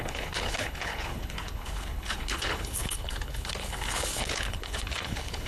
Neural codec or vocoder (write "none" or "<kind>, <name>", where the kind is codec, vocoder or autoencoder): codec, HILCodec